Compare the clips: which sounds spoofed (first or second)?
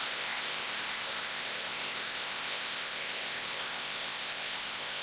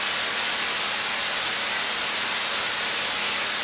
first